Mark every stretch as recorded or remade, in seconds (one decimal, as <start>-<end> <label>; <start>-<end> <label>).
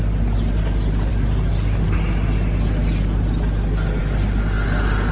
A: 0.0-5.1 recorded